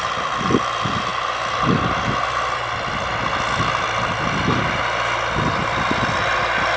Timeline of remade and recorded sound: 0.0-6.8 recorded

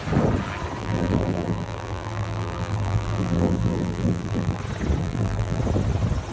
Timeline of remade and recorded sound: 0.0-0.8 recorded; 0.8-4.6 remade; 4.6-5.0 recorded; 5.0-5.6 remade; 5.6-6.3 recorded

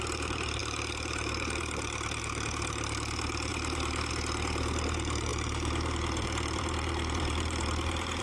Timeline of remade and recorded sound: 0.0-8.2 remade

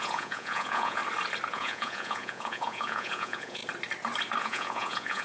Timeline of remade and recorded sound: 0.0-1.0 remade; 1.0-1.5 recorded; 1.5-3.6 remade; 3.6-4.4 recorded; 4.4-5.2 remade

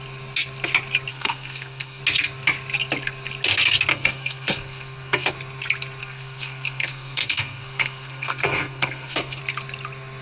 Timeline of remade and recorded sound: 0.0-1.1 recorded; 1.1-2.0 remade; 2.0-3.9 recorded; 3.9-5.3 remade; 5.3-6.0 recorded; 6.0-9.4 remade; 9.4-10.2 recorded

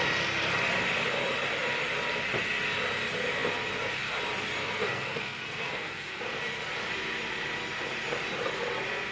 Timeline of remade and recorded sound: 0.0-4.6 recorded; 4.6-6.2 remade; 6.2-9.1 recorded

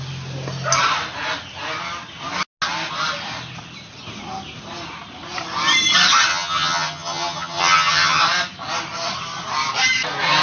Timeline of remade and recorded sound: 0.0-6.3 recorded; 6.3-8.2 remade; 8.2-10.4 recorded

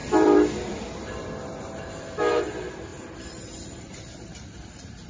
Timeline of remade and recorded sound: 0.0-2.2 remade; 2.2-2.9 recorded; 2.9-5.1 remade